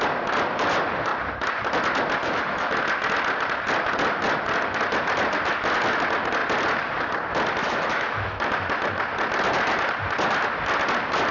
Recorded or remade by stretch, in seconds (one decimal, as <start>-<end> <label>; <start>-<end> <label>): 0.0-2.2 recorded; 2.2-2.7 remade; 2.7-7.6 recorded; 7.6-8.4 remade; 8.4-11.3 recorded